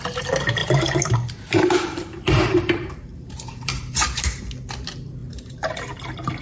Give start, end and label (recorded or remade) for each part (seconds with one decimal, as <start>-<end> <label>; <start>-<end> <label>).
0.0-0.6 recorded; 0.6-4.4 remade; 4.4-5.2 recorded; 5.2-5.7 remade; 5.7-6.4 recorded